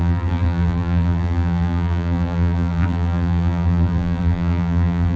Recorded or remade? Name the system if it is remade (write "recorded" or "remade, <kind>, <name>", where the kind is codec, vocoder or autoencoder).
remade, vocoder, BigVGAN v2